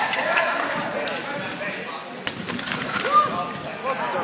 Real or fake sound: real